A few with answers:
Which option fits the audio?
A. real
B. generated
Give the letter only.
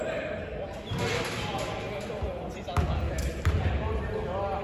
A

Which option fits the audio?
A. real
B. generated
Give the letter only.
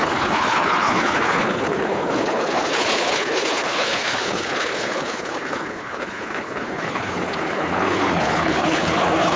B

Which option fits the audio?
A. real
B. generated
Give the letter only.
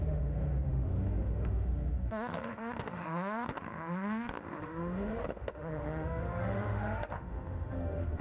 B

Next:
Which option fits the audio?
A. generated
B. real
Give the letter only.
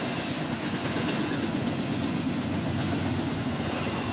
A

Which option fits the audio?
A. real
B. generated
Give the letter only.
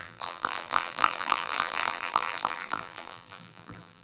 B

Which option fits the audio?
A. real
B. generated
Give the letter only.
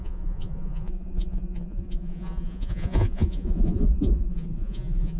B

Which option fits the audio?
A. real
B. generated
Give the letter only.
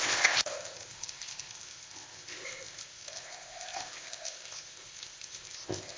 B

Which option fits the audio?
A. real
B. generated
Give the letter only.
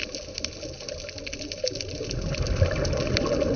A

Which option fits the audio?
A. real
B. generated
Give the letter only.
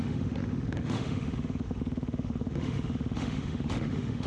B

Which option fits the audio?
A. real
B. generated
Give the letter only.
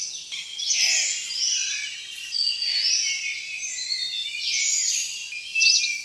A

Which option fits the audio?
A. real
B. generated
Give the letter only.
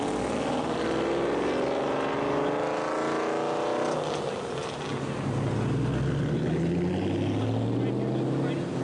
A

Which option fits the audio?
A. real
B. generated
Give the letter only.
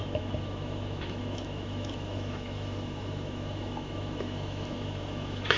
B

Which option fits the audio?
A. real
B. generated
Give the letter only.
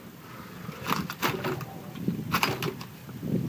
A